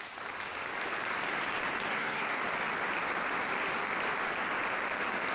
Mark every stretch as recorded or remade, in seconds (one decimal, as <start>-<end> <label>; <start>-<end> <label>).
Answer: 0.0-1.9 recorded; 1.9-2.4 remade; 2.4-5.3 recorded